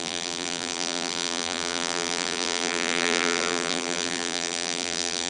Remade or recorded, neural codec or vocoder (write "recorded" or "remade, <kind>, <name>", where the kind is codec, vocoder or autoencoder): remade, vocoder, BigVGAN v2